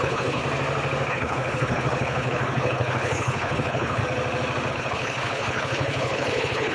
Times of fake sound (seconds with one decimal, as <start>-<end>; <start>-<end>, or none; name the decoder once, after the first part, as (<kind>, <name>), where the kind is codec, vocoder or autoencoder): 0.0-0.4 (codec, HILCodec); 1.1-4.0; 4.7-6.7